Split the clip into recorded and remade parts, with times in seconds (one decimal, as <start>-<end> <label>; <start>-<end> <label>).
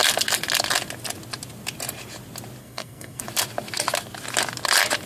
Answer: 0.0-2.6 recorded; 2.6-3.2 remade; 3.2-5.1 recorded